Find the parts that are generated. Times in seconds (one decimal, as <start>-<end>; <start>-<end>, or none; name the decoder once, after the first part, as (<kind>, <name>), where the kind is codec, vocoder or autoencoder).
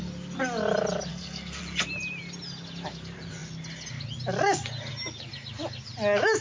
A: 1.1-1.6 (codec, SNAC)